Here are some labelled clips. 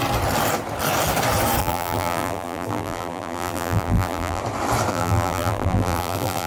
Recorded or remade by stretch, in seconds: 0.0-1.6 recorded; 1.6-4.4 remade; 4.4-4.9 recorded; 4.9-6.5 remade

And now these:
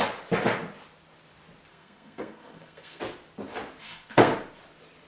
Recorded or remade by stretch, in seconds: 0.0-1.7 recorded; 1.7-3.0 remade; 3.0-3.8 recorded; 3.8-4.3 remade; 4.3-5.1 recorded

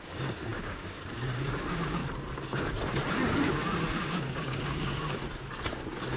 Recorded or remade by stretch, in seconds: 0.0-2.0 remade; 2.0-4.0 recorded; 4.0-5.2 remade; 5.2-6.2 recorded

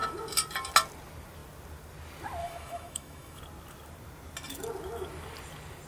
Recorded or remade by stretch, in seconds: 0.0-2.4 recorded; 2.4-3.4 remade; 3.4-5.9 recorded

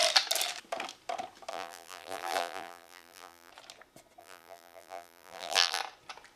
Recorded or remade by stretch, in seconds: 0.0-1.5 recorded; 1.5-3.5 remade; 3.5-4.2 recorded; 4.2-5.8 remade; 5.8-6.4 recorded